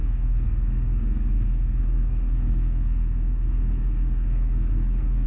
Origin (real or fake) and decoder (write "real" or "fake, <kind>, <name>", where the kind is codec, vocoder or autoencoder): fake, codec, SNAC